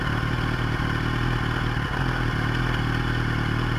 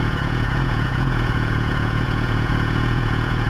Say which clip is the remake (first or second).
second